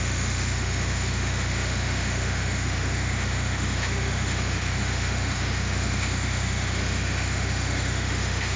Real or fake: fake